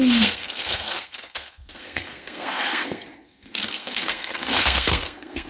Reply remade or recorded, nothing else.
remade